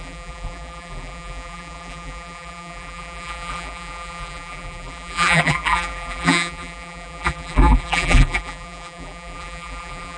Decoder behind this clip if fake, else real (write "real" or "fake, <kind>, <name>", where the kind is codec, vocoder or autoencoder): fake, vocoder, BigVGAN v2